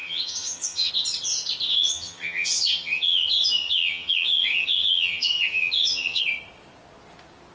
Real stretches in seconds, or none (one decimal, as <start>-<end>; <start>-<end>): 0.9-1.7; 6.2-7.5